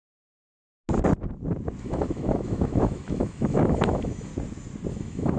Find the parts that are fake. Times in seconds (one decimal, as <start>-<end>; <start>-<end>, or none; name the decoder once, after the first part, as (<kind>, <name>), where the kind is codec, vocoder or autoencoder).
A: 1.8-4.3 (autoencoder, DAC-VAE); 4.9-5.4